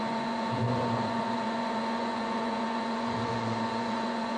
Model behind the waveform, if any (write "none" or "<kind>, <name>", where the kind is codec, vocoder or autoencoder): vocoder, Vocos